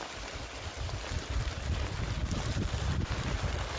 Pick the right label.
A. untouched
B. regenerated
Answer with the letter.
A